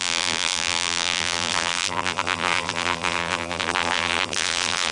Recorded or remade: remade